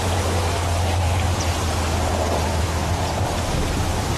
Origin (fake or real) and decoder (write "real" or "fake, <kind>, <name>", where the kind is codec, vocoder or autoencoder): real